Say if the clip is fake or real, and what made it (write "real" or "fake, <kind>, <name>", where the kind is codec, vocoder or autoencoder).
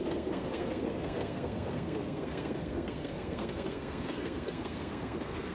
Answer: fake, codec, SNAC